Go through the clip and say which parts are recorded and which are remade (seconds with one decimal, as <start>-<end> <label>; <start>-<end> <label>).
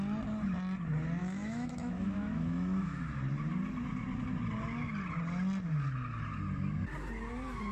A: 0.0-1.2 recorded; 1.2-3.0 remade; 3.0-7.7 recorded